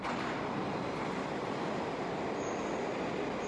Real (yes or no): yes